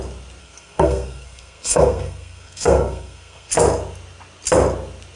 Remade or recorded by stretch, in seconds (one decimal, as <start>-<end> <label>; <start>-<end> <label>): 0.0-0.4 recorded; 0.4-3.5 remade; 3.5-5.2 recorded